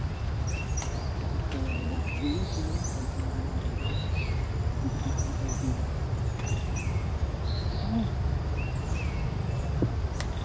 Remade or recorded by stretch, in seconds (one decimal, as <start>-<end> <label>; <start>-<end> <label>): 0.0-1.7 recorded; 1.7-2.2 remade; 2.2-10.4 recorded